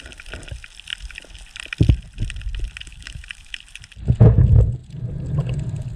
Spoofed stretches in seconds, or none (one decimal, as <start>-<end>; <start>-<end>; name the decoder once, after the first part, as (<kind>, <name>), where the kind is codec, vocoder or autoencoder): 2.9-3.6 (autoencoder, DAC-VAE)